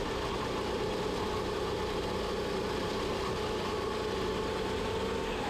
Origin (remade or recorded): recorded